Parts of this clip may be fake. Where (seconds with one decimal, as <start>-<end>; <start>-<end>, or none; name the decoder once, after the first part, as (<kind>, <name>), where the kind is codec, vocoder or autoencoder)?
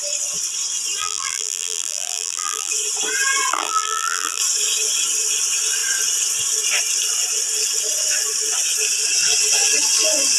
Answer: 1.0-2.7 (vocoder, BigVGAN v2); 3.5-4.4